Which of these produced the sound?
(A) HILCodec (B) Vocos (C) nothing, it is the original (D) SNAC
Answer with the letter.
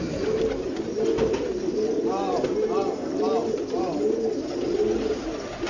C